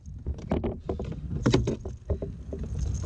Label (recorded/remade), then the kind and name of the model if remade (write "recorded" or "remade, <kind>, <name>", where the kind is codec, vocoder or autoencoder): recorded